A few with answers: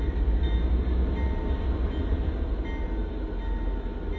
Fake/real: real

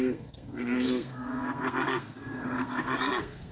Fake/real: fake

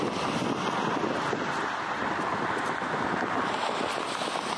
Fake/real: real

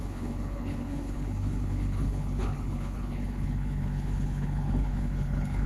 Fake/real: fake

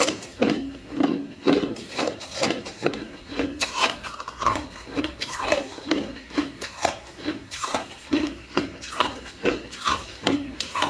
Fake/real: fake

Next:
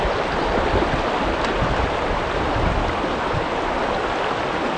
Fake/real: real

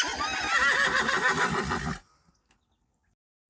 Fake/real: real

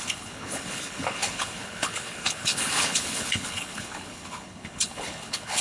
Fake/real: fake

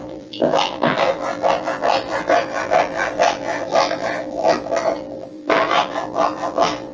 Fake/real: fake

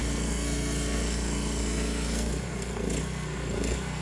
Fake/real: fake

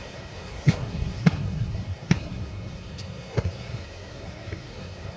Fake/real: fake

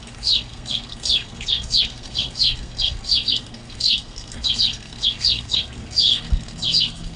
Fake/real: fake